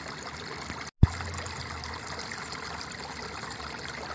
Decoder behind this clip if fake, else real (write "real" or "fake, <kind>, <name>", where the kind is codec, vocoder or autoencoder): real